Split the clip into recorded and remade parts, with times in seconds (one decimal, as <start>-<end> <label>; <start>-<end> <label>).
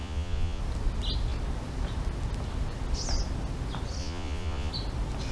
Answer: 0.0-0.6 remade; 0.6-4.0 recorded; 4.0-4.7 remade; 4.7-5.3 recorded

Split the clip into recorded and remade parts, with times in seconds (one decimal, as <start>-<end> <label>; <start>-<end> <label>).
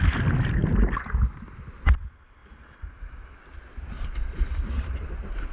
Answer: 0.0-5.5 recorded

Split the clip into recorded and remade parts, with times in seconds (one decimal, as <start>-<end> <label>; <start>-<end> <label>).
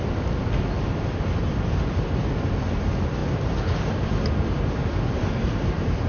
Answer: 0.0-6.1 recorded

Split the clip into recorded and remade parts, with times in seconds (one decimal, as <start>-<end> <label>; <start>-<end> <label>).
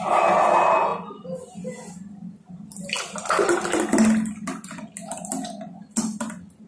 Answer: 0.0-6.7 recorded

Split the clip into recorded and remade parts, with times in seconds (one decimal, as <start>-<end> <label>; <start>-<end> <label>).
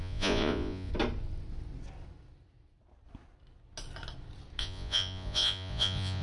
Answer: 0.0-0.9 remade; 0.9-4.6 recorded; 4.6-6.2 remade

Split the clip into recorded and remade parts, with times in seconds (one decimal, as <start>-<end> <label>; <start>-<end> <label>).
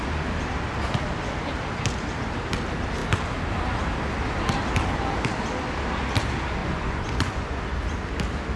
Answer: 0.0-6.6 recorded; 6.6-7.6 remade; 7.6-8.6 recorded